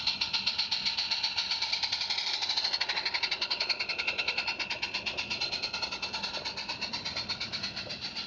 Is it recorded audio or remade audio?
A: recorded